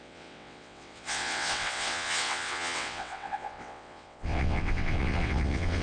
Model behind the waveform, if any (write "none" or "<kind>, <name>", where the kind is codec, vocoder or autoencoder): vocoder, WaveNeXt